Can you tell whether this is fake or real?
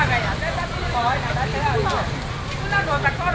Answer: real